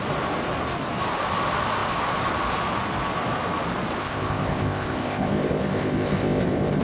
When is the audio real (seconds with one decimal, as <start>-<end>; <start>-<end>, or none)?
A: 0.0-4.0